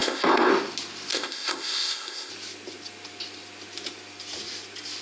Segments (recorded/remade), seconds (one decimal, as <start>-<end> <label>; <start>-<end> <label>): 0.0-0.5 remade; 0.5-1.1 recorded; 1.1-2.3 remade; 2.3-5.0 recorded